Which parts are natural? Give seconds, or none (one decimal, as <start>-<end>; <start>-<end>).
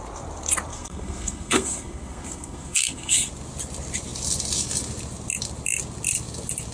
0.0-0.7; 3.3-6.7